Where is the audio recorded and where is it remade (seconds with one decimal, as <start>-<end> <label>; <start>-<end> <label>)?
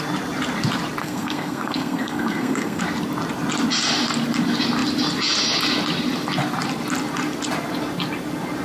0.0-1.0 recorded; 1.0-2.8 remade; 2.8-8.6 recorded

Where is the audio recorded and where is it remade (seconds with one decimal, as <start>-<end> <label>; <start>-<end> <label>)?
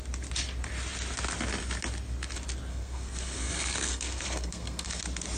0.0-2.7 recorded; 2.7-5.0 remade; 5.0-5.4 recorded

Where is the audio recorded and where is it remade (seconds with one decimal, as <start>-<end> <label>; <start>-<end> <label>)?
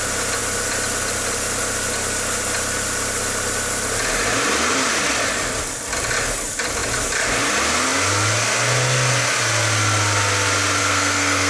0.0-10.8 recorded; 10.8-11.5 remade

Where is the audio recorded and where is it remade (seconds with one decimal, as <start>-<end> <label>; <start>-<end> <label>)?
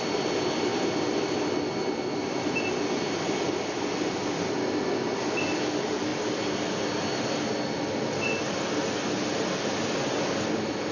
0.0-10.9 recorded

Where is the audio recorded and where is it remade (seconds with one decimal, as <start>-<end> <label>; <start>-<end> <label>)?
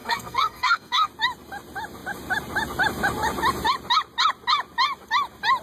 0.0-1.1 remade; 1.1-5.6 recorded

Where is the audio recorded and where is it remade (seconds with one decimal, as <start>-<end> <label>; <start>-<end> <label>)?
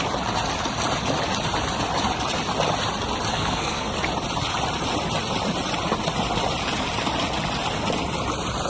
0.0-3.3 recorded; 3.3-3.9 remade; 3.9-8.7 recorded